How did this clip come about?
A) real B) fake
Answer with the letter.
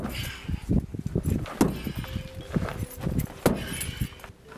A